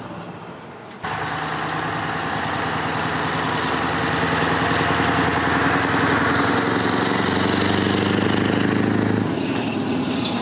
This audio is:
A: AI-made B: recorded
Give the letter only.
B